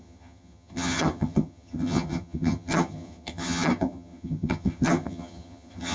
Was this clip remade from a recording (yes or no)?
yes